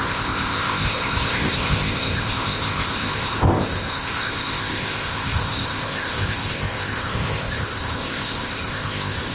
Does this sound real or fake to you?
fake